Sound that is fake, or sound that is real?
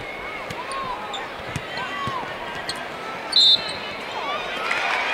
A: real